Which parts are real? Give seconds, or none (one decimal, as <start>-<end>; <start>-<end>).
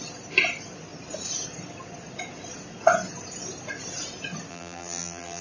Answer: 0.0-4.5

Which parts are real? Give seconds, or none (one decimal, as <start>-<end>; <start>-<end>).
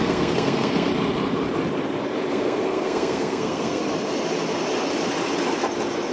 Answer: 0.9-2.3; 3.8-6.1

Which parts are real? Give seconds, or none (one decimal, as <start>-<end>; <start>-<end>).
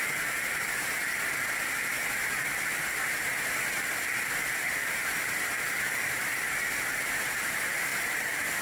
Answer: 0.0-7.9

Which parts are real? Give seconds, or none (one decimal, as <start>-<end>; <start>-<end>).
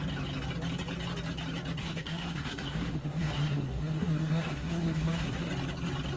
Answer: 0.0-1.8; 5.5-6.2